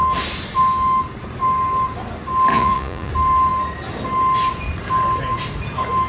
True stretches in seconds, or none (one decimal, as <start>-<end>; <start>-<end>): 0.0-2.5; 3.1-6.1